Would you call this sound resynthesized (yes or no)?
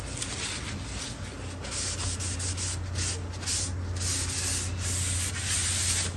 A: no